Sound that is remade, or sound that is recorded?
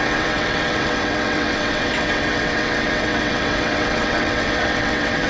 remade